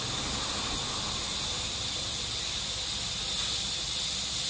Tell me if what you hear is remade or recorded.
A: recorded